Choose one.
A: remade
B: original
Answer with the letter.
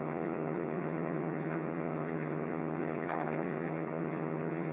A